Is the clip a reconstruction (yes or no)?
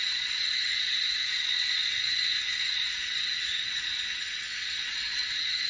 yes